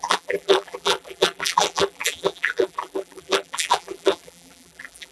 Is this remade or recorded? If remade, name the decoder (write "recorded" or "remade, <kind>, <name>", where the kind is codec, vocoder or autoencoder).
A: remade, vocoder, BigVGAN v2